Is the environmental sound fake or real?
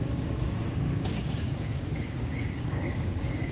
fake